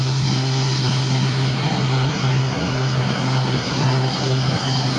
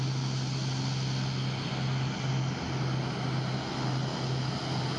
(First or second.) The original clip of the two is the second